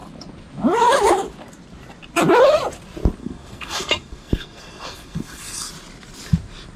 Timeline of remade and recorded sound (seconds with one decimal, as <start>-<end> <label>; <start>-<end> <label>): 0.0-3.2 recorded; 3.2-5.7 remade; 5.7-6.8 recorded